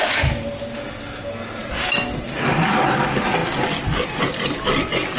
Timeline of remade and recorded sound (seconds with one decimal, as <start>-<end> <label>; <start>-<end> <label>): 0.0-5.2 recorded